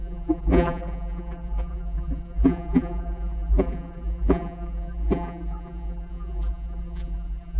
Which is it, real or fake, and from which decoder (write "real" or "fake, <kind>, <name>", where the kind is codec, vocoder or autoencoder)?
fake, vocoder, BigVGAN v2